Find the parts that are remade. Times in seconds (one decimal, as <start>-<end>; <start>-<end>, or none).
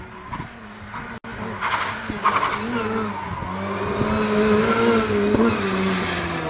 none